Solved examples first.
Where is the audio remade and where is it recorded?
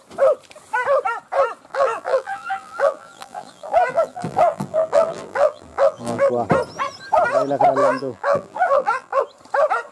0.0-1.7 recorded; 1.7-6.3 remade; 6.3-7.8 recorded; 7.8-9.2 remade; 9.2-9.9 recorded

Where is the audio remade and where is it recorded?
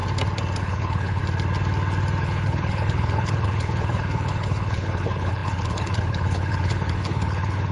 0.0-0.6 recorded; 0.6-1.2 remade; 1.2-2.2 recorded; 2.2-7.7 remade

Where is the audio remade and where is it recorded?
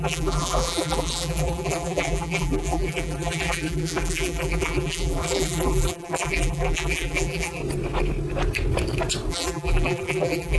0.0-7.6 remade; 7.6-9.3 recorded; 9.3-10.6 remade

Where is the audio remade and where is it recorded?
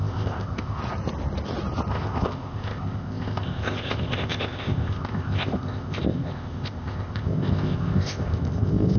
0.0-0.8 remade; 0.8-1.9 recorded; 1.9-9.0 remade